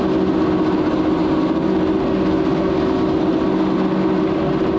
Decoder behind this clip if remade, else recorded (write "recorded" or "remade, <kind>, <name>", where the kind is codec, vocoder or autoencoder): recorded